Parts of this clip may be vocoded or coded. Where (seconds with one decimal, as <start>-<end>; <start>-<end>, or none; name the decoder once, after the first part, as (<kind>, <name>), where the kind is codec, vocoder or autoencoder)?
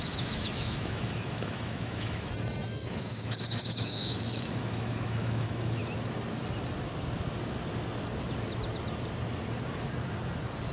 0.0-5.8 (autoencoder, DAC-VAE)